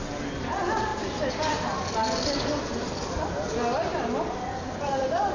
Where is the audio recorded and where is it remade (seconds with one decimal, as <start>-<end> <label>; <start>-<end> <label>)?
0.0-5.3 recorded